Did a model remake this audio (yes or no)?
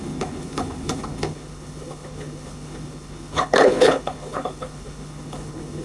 yes